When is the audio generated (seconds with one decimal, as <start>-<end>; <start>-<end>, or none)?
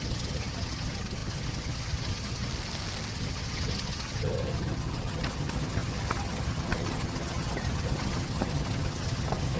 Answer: 0.0-2.5; 3.1-9.6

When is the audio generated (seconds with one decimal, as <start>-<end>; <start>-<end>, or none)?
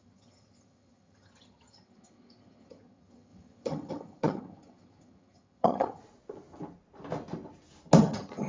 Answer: 0.0-6.0; 8.0-8.5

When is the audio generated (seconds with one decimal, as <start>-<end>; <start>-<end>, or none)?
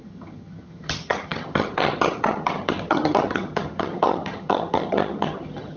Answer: 0.0-5.8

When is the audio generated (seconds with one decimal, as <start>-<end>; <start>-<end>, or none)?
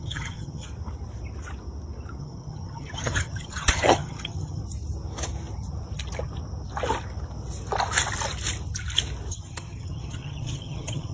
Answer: 0.0-0.7; 2.2-4.6; 9.3-11.1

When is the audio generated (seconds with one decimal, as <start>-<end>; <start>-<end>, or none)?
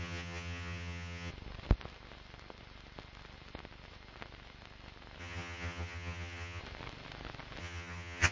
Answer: 0.0-1.3; 5.2-6.6; 7.6-8.3